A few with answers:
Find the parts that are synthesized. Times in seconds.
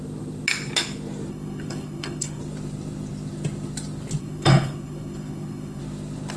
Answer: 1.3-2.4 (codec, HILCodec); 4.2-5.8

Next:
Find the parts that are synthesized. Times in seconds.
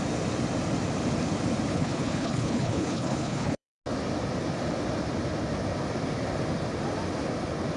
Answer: 1.7-3.8 (codec, HILCodec)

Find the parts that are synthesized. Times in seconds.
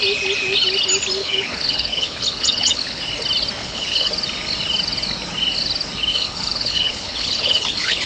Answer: 1.2-3.0 (codec, HILCodec); 3.6-4.1; 6.1-8.1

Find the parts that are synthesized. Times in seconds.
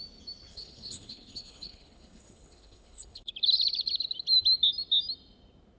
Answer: 0.5-3.3 (codec, HILCodec)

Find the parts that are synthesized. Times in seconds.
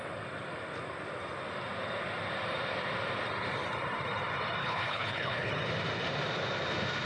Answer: 4.6-5.5 (codec, HILCodec)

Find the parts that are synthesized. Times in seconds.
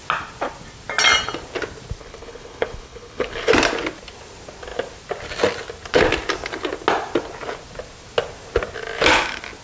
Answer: 2.0-3.5 (codec, HILCodec)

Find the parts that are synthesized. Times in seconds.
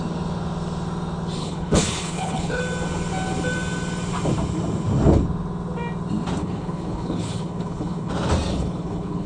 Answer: 1.4-2.6 (codec, HILCodec); 6.4-8.1; 8.5-9.3